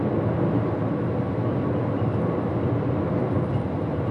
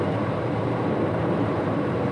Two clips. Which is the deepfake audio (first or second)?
second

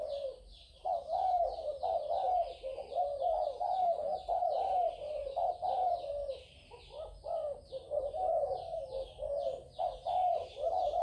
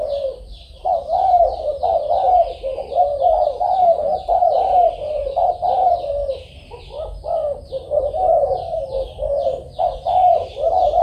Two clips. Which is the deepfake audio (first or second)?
second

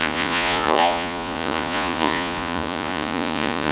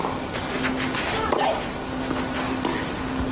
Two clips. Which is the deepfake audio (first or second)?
first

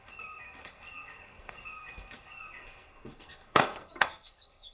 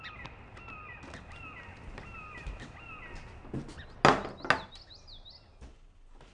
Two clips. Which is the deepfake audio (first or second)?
first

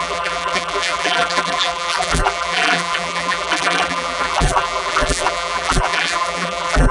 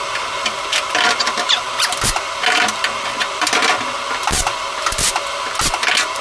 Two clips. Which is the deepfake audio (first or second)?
first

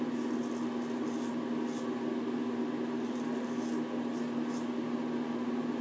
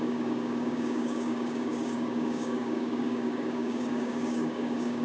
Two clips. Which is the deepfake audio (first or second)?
second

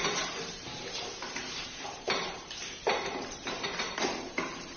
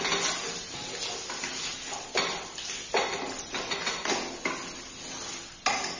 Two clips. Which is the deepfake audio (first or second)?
first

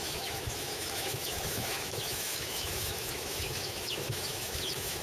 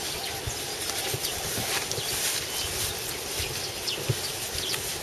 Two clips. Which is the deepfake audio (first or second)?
first